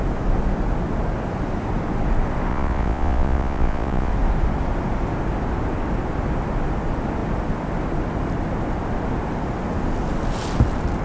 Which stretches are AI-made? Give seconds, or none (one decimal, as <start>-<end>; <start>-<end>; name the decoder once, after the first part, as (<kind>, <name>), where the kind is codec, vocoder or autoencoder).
2.5-4.1 (vocoder, Vocos)